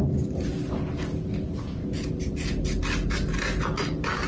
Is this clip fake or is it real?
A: real